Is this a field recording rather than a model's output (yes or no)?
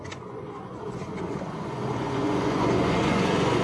no